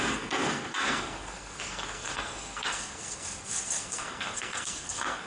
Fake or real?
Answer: fake